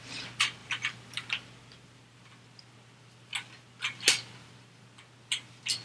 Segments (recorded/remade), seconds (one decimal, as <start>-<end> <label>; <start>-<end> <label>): 0.0-5.8 recorded